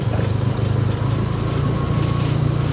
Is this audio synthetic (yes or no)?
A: yes